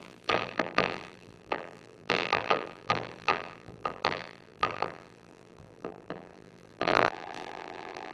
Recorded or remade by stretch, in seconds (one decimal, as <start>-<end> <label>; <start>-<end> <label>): 0.0-8.1 remade